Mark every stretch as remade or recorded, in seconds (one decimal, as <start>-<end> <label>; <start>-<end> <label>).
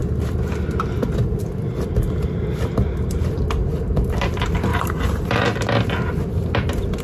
0.0-4.7 recorded; 4.7-5.4 remade; 5.4-7.0 recorded